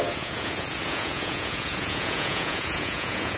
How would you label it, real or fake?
fake